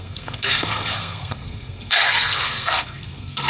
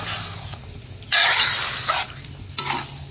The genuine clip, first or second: second